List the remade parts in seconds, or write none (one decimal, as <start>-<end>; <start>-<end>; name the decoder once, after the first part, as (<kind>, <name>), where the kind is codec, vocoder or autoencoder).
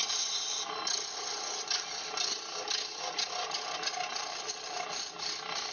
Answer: none